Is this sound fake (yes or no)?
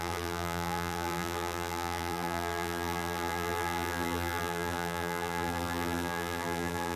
yes